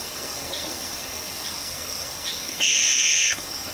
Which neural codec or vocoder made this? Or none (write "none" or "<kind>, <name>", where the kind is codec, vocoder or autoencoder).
codec, SNAC